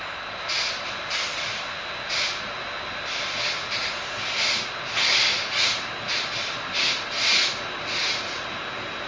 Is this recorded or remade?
recorded